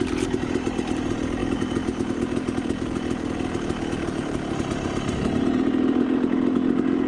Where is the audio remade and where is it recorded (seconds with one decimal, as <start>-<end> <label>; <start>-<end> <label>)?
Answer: 0.0-7.1 recorded